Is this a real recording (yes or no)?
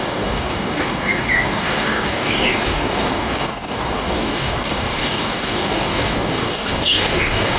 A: no